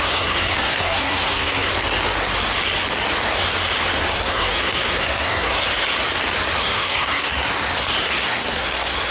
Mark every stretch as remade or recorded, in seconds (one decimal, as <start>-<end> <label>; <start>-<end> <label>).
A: 0.0-1.7 remade; 1.7-4.0 recorded; 4.0-5.6 remade; 5.6-6.6 recorded; 6.6-7.3 remade; 7.3-8.0 recorded; 8.0-9.1 remade